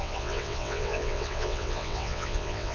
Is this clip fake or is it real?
fake